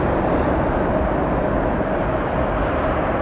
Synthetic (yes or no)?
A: no